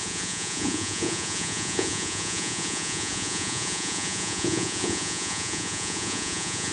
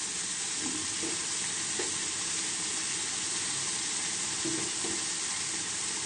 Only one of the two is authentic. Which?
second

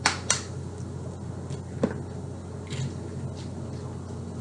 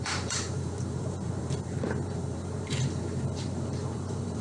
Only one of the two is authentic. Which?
first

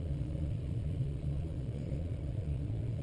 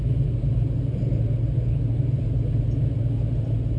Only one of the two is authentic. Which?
second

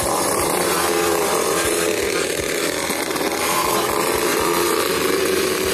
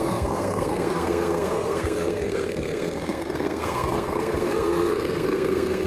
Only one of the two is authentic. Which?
first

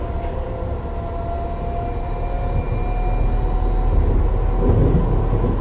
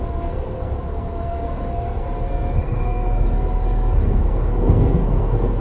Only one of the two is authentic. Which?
first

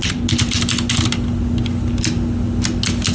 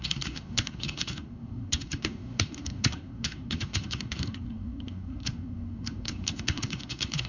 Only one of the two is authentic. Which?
first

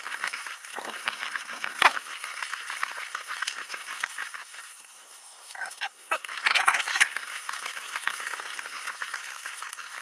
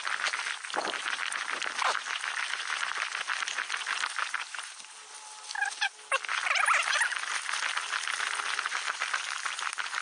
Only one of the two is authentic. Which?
second